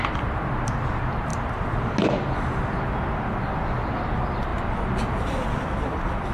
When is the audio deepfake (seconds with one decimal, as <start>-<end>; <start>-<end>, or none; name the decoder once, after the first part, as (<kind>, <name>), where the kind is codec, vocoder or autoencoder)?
0.0-1.3 (vocoder, BigVGAN v2); 3.0-4.5; 5.2-6.3

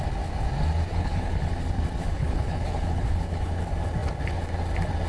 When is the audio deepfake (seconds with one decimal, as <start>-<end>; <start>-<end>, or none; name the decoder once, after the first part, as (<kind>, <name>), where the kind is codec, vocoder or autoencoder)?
0.9-1.5 (codec, HILCodec); 2.0-3.5

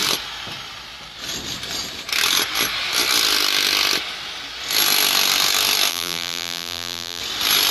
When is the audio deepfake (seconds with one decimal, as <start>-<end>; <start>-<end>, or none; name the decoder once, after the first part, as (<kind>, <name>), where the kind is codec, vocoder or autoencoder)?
5.9-7.2 (vocoder, BigVGAN v2)

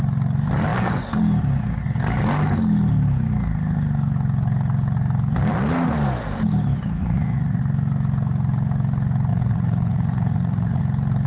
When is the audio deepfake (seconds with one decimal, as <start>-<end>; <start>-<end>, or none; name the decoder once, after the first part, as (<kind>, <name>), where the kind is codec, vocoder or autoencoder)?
7.0-7.6 (vocoder, Vocos); 9.3-10.8

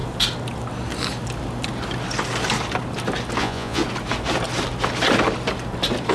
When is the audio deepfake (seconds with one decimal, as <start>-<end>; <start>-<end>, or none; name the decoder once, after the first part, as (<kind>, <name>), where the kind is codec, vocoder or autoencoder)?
3.4-3.8 (vocoder, Vocos)

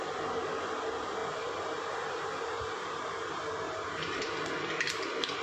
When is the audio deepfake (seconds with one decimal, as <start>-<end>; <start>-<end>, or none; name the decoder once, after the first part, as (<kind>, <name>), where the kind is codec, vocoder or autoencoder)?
1.2-4.4 (vocoder, BigVGAN v2)